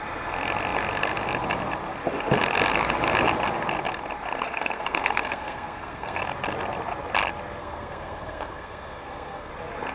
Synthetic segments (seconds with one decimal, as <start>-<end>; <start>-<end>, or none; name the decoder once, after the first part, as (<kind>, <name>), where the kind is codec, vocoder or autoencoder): 4.5-6.2 (codec, SNAC); 7.6-9.5

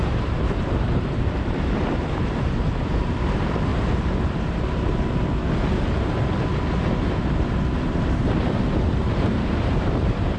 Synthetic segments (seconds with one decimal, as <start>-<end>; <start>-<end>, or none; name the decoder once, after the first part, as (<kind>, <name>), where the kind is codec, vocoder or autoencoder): 0.0-3.7 (vocoder, BigVGAN v2); 8.8-10.4

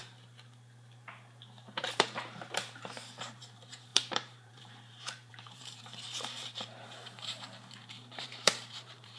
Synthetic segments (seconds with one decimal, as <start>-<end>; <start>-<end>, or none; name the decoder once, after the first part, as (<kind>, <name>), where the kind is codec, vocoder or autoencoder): 1.8-9.2 (vocoder, BigVGAN v2)

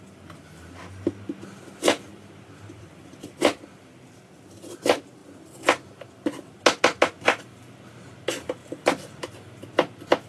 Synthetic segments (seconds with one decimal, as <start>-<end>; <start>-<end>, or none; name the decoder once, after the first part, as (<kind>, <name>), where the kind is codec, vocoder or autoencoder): 2.1-3.6 (vocoder, BigVGAN v2); 8.6-9.3

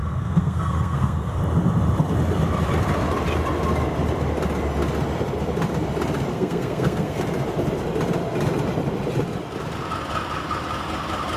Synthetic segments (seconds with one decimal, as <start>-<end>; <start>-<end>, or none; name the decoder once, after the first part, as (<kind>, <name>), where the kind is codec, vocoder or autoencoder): 0.0-1.4 (codec, SNAC); 6.3-7.2

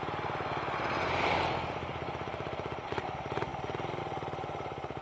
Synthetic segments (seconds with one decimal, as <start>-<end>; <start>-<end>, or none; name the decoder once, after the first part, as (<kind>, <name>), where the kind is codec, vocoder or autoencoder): none